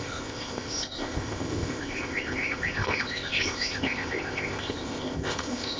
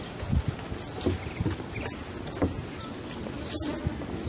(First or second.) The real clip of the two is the second